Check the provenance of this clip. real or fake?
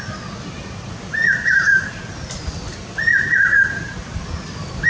real